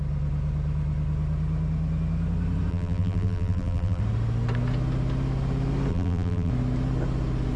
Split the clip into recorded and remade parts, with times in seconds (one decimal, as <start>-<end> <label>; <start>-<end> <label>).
0.0-2.7 recorded; 2.7-4.0 remade; 4.0-5.9 recorded; 5.9-6.5 remade; 6.5-7.6 recorded